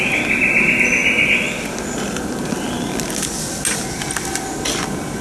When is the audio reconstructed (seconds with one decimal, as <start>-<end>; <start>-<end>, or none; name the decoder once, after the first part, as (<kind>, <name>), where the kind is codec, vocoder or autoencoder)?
none